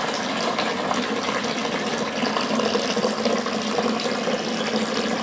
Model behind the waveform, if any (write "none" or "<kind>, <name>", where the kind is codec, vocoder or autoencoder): none